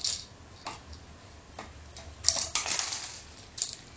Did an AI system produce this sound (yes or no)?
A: no